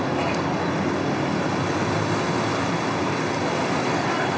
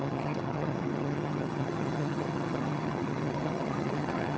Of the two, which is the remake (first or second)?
second